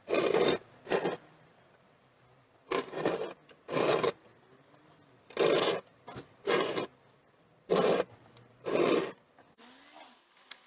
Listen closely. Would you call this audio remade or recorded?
remade